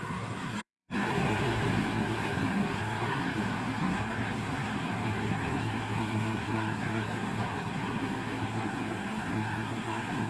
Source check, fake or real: fake